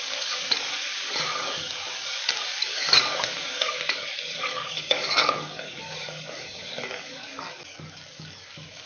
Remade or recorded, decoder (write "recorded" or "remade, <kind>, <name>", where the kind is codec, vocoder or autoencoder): remade, codec, DAC